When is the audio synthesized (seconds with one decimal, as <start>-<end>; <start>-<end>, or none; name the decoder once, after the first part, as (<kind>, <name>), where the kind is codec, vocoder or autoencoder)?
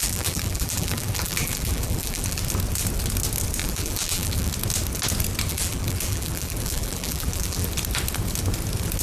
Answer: 0.0-2.4 (vocoder, BigVGAN v2); 3.6-4.5; 5.5-7.7